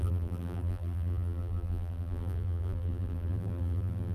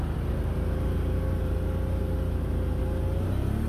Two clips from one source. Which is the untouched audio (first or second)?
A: second